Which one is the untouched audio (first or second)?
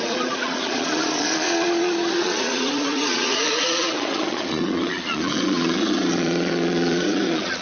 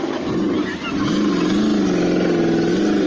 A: second